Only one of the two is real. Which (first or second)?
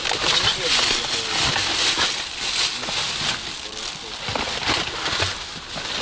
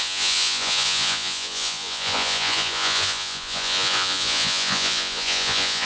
first